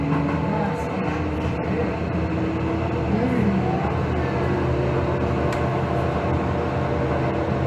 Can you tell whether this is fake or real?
real